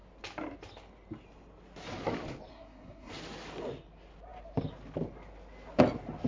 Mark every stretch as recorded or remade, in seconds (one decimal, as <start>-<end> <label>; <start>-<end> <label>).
0.0-2.5 recorded; 2.5-3.1 remade; 3.1-6.3 recorded